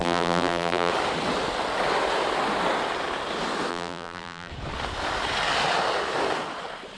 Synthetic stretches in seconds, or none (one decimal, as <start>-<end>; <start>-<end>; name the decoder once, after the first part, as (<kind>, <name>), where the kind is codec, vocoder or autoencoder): 0.0-0.9 (vocoder, BigVGAN v2); 3.7-4.5